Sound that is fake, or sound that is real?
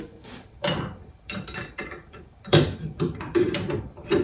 fake